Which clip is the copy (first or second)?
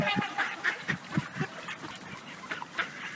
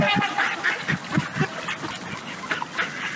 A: first